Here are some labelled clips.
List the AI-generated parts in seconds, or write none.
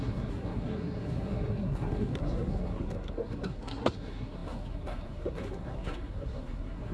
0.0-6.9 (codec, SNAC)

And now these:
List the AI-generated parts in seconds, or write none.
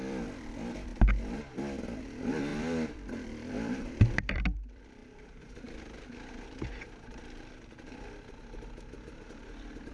0.0-0.9 (vocoder, BigVGAN v2); 2.0-9.9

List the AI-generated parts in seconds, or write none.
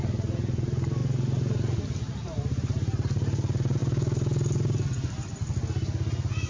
none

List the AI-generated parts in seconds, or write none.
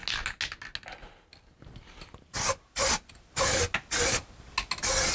none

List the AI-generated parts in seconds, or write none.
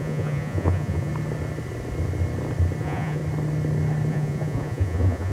0.0-1.1 (vocoder, Vocos); 2.8-3.2; 4.1-5.3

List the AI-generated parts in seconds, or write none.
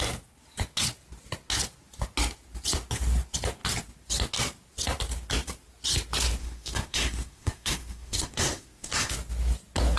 6.4-9.1 (codec, SNAC)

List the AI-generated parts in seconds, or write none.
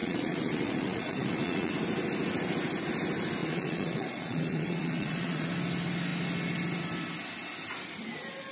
0.0-1.7 (vocoder, Vocos); 3.4-5.5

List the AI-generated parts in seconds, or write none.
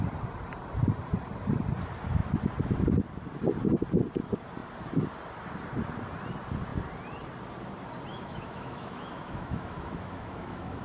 8.1-10.8 (autoencoder, DAC-VAE)